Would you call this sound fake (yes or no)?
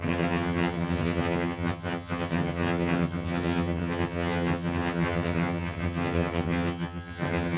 yes